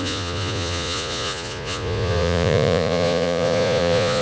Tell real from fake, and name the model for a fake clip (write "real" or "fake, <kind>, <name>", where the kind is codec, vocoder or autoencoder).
fake, vocoder, Vocos